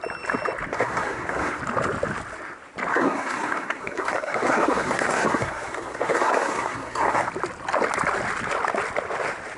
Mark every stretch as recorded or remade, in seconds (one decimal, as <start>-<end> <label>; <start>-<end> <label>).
0.0-0.7 recorded; 0.7-1.6 remade; 1.6-2.9 recorded; 2.9-7.3 remade; 7.3-9.6 recorded